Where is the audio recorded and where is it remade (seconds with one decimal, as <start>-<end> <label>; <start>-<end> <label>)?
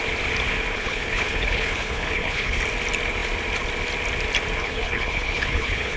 0.0-0.8 recorded; 0.8-2.6 remade; 2.6-4.6 recorded; 4.6-6.0 remade